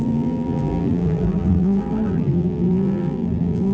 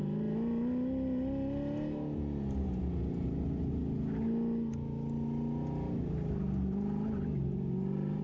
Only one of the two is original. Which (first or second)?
second